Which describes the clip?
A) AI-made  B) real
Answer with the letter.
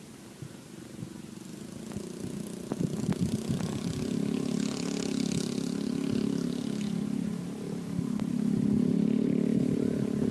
B